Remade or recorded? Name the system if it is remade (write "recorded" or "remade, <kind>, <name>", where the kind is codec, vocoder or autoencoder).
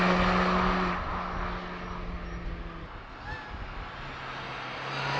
recorded